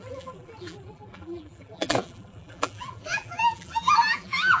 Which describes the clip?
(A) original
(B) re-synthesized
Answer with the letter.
B